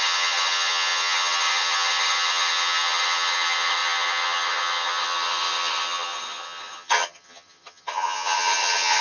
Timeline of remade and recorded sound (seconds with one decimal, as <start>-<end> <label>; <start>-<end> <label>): 0.0-9.0 remade